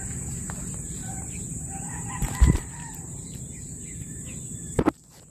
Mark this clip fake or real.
fake